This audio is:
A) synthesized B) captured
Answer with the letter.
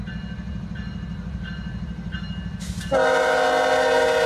B